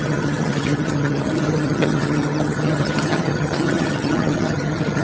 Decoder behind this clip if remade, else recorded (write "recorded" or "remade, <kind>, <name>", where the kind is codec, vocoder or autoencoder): remade, vocoder, HiFi-GAN